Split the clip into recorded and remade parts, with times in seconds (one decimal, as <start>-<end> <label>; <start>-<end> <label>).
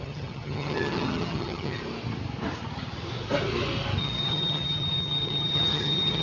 0.0-1.8 remade; 1.8-4.0 recorded; 4.0-6.2 remade